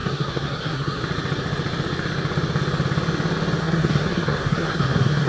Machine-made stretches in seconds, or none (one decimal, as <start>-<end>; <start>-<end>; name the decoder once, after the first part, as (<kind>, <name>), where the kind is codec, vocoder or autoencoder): 0.0-1.0 (codec, SNAC); 3.6-5.3